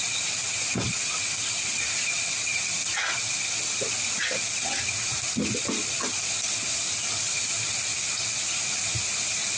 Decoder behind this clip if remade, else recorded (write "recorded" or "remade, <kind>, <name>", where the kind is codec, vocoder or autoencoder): recorded